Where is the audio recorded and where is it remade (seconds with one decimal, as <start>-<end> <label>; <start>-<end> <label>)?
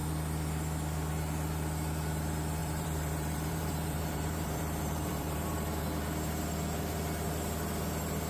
0.0-2.6 recorded; 2.6-5.8 remade; 5.8-8.3 recorded